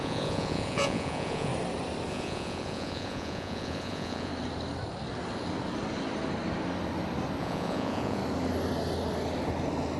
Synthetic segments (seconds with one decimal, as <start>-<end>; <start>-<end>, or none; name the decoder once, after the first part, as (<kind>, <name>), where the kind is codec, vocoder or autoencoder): 0.0-1.5 (vocoder, Vocos); 2.1-4.3; 7.4-8.2